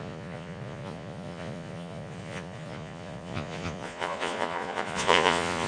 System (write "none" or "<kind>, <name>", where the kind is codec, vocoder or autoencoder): vocoder, Vocos